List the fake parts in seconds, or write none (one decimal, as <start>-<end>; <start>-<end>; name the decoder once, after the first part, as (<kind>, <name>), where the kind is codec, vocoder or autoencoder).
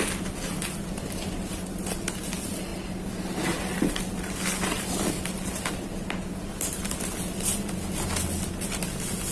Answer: none